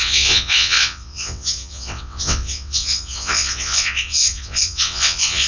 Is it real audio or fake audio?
fake